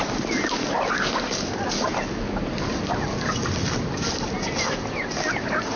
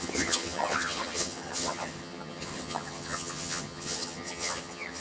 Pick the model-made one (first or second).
second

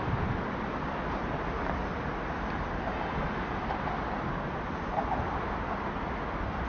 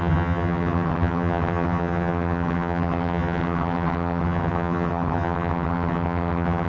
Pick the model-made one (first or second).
second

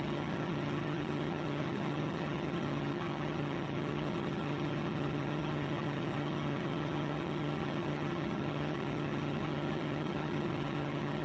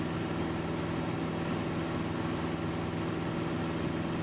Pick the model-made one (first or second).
first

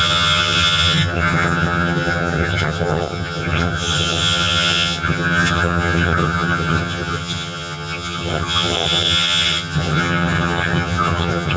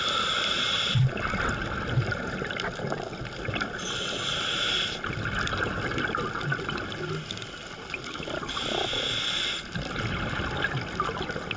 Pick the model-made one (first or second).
first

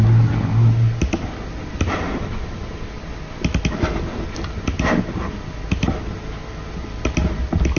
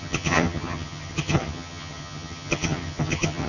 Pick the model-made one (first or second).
second